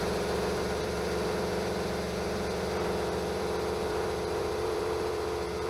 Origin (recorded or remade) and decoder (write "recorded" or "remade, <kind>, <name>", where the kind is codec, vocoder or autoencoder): remade, vocoder, BigVGAN v2